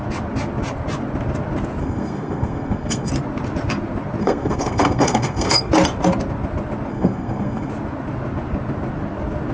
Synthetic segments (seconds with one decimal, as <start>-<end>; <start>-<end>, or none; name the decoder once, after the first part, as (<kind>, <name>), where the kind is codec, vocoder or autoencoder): 1.8-3.1 (codec, SNAC); 4.2-5.7; 6.9-7.7